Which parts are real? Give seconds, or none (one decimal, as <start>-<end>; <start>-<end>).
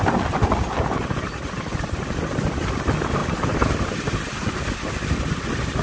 0.0-3.2; 4.2-5.8